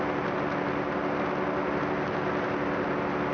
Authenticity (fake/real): real